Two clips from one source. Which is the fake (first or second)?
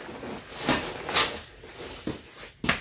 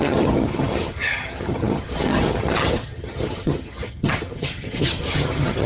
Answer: second